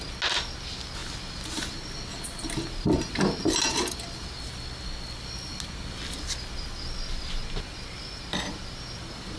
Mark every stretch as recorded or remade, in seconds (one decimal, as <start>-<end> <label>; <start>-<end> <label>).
0.0-9.4 recorded